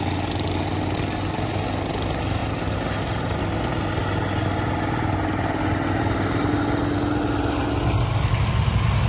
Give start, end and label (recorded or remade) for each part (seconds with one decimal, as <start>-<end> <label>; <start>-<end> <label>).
0.0-9.1 recorded